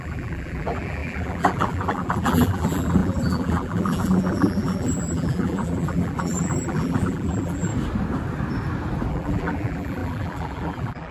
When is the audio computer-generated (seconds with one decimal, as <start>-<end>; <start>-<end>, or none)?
0.0-7.7; 9.1-11.1